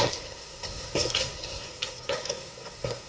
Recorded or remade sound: remade